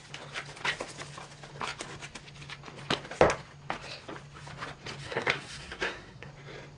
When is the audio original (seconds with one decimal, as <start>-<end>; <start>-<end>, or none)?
0.0-5.0; 6.3-6.8